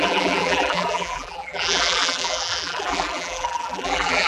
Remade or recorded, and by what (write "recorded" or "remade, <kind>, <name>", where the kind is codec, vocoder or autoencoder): remade, vocoder, BigVGAN v2